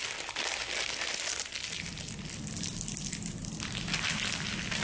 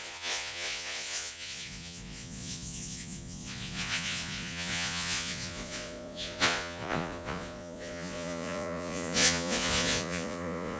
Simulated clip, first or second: second